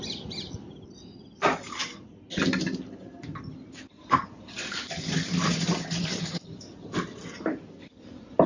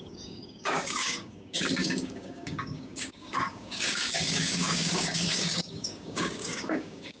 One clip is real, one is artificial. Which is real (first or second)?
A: first